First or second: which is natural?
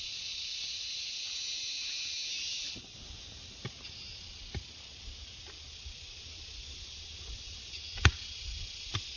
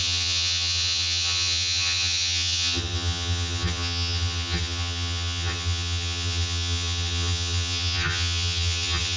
first